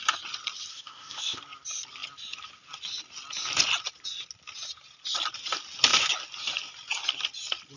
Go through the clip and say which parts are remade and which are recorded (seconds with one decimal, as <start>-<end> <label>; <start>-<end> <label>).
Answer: 0.0-0.7 recorded; 0.7-1.4 remade; 1.4-7.8 recorded